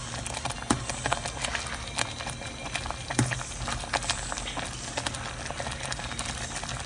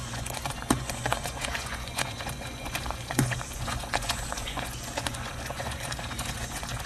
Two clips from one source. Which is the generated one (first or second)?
second